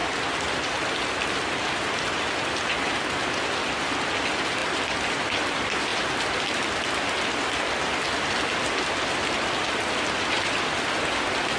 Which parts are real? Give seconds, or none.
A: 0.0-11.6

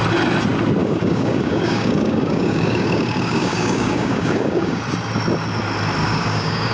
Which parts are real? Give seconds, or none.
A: 0.0-0.8; 4.8-6.0

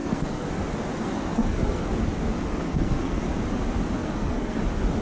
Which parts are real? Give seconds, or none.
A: 0.5-1.0; 2.0-2.5; 3.2-4.0; 4.6-5.0

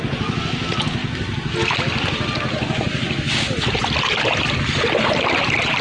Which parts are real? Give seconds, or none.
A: 0.0-5.8

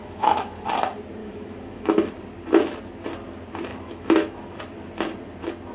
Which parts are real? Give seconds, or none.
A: 0.7-1.2; 2.1-3.7; 4.6-5.7

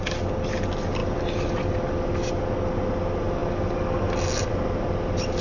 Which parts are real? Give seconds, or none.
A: 0.0-5.4

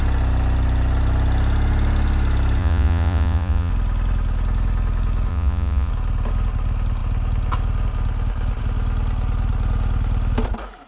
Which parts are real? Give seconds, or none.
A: 0.0-2.6; 3.7-5.3; 5.9-10.9

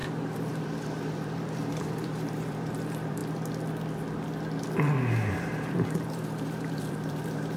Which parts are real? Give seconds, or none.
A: 3.2-5.3